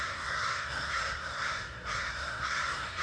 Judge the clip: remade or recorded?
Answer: remade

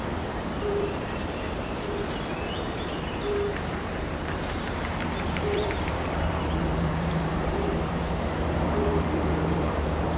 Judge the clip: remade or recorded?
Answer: remade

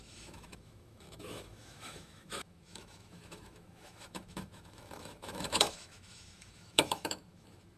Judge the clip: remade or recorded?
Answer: remade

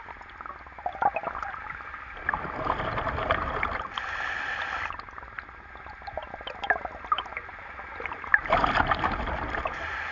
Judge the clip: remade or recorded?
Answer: remade